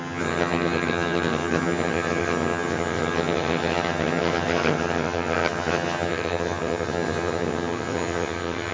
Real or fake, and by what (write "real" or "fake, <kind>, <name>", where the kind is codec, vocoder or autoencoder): fake, vocoder, HiFi-GAN